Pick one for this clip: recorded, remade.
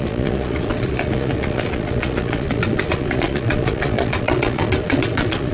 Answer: remade